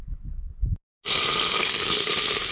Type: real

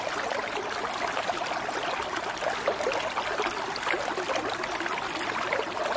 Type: real